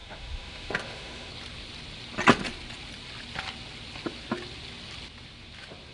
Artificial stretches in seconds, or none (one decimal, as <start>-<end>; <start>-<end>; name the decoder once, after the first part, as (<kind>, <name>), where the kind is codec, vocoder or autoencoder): 0.0-1.3 (autoencoder, DAC-VAE)